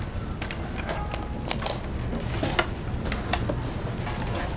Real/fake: real